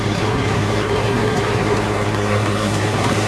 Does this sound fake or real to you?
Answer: fake